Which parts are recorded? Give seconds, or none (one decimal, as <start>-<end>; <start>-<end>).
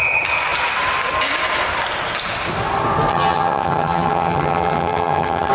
0.0-3.1